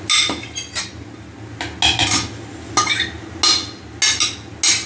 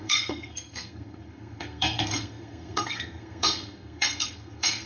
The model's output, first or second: second